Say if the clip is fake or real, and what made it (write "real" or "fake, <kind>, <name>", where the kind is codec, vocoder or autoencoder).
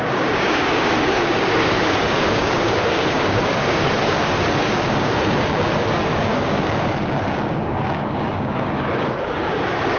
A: fake, codec, DAC